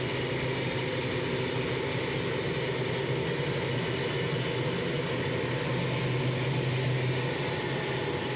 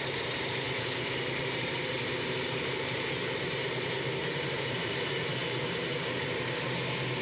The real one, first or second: first